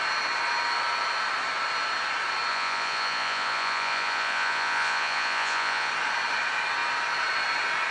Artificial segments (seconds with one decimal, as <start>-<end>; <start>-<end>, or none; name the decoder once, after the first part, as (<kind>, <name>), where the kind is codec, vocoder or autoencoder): 2.5-5.9 (vocoder, Vocos)